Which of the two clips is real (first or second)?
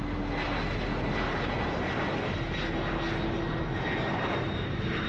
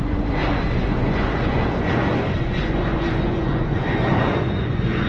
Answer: first